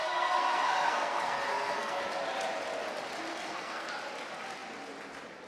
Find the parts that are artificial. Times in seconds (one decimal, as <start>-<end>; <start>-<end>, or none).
0.0-2.0; 3.3-3.9